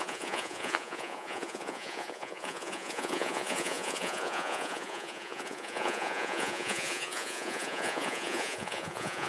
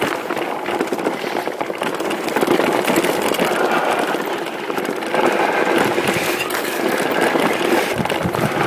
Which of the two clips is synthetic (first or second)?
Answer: first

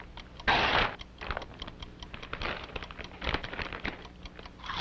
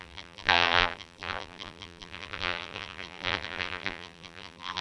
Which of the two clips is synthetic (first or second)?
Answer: second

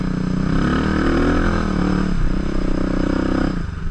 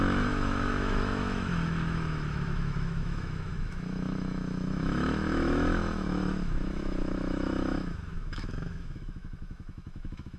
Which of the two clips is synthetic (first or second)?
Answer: second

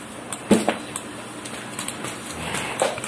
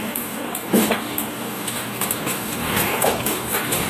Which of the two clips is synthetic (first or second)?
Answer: second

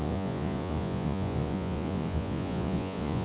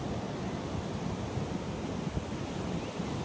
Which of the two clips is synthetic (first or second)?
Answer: first